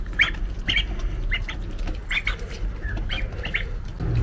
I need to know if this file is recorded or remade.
recorded